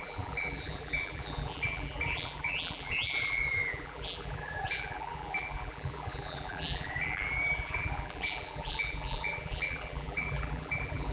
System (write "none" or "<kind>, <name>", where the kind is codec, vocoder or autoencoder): vocoder, BigVGAN v2